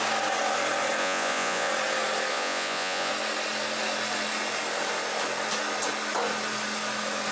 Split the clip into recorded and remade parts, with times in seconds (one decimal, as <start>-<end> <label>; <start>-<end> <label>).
0.0-1.0 recorded; 1.0-1.7 remade; 1.7-2.3 recorded; 2.3-3.1 remade; 3.1-7.3 recorded